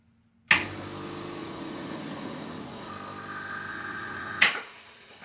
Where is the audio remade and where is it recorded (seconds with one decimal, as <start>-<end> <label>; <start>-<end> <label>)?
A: 0.0-1.4 recorded; 1.4-2.9 remade; 2.9-3.7 recorded; 3.7-5.2 remade